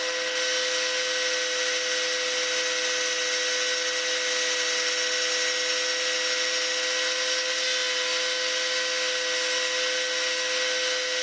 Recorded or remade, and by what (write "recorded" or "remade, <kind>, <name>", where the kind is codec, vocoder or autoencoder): recorded